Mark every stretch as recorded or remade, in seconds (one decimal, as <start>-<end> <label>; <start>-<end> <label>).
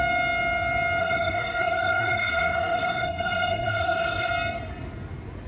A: 0.0-1.0 recorded; 1.0-4.3 remade; 4.3-5.5 recorded